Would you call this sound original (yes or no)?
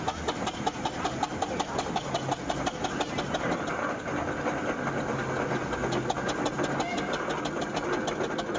yes